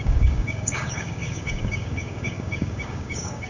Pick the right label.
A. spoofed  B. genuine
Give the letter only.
A